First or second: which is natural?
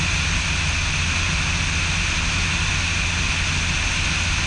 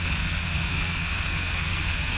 first